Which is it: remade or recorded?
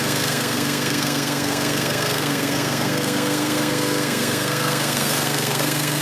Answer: remade